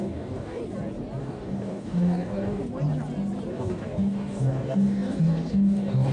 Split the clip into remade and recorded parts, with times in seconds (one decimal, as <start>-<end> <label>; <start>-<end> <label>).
0.0-0.6 remade; 0.6-1.2 recorded; 1.2-2.6 remade; 2.6-3.5 recorded; 3.5-6.1 remade